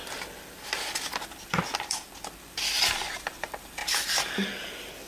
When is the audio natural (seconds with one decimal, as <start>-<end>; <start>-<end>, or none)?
0.0-3.1; 3.8-5.1